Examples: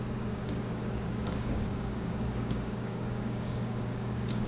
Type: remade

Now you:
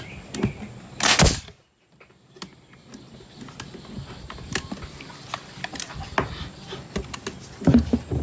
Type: recorded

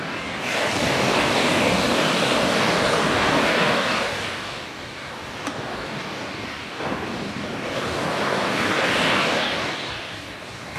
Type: remade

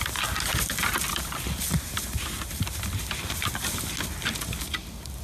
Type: recorded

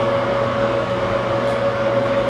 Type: remade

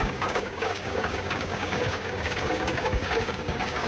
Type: remade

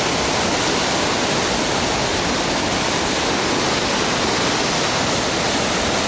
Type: recorded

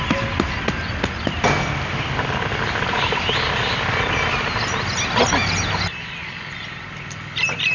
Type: recorded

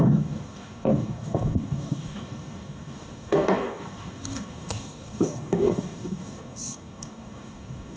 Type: remade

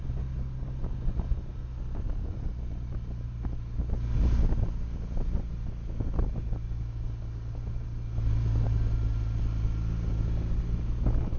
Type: recorded